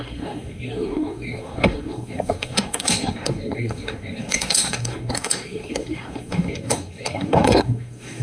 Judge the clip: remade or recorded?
remade